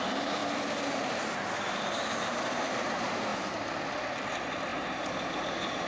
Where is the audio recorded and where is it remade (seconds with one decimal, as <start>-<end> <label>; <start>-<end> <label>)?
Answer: 0.0-0.4 remade; 0.4-2.2 recorded; 2.2-3.3 remade; 3.3-4.1 recorded; 4.1-5.9 remade

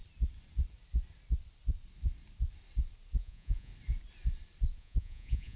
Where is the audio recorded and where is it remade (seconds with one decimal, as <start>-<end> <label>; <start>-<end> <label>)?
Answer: 0.0-3.2 recorded; 3.2-3.7 remade; 3.7-4.8 recorded; 4.8-5.6 remade

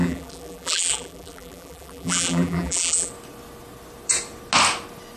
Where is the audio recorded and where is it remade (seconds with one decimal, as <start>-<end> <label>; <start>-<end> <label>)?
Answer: 0.0-3.1 remade; 3.1-5.2 recorded

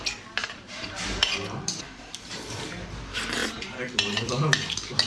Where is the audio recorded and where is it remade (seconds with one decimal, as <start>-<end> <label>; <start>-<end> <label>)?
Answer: 0.0-0.4 recorded; 0.4-2.6 remade; 2.6-3.4 recorded; 3.4-4.3 remade; 4.3-5.1 recorded

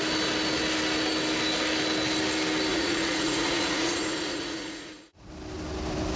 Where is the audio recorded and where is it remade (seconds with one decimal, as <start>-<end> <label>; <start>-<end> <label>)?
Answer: 0.0-2.7 recorded; 2.7-5.3 remade; 5.3-6.2 recorded